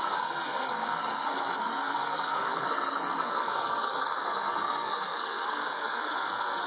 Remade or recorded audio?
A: remade